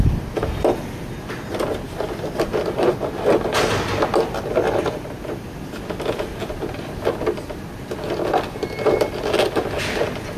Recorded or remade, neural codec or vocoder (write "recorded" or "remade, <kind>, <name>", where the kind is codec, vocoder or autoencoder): recorded